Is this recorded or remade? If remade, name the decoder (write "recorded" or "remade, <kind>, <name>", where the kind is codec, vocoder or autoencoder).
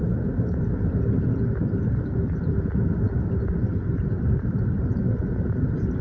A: recorded